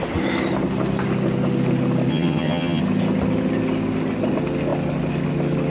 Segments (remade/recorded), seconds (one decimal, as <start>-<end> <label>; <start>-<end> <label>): 0.0-2.1 recorded; 2.1-2.8 remade; 2.8-5.7 recorded